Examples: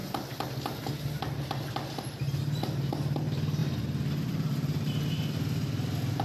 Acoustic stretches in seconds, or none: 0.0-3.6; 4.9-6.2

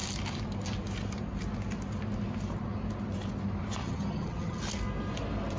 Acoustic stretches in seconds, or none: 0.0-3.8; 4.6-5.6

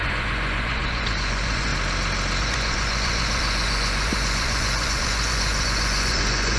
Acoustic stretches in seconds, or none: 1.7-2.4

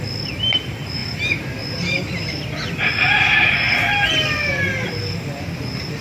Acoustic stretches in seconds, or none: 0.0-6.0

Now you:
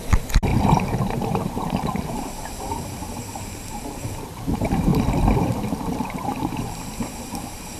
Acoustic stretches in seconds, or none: 4.9-5.4

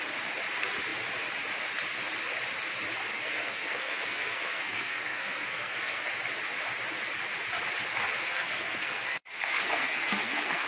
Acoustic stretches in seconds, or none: 0.0-3.1; 6.1-8.2

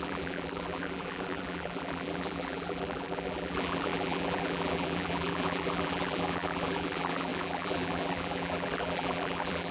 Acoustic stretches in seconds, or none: none